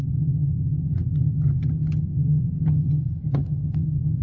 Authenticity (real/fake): fake